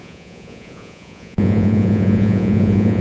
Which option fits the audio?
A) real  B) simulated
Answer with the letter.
B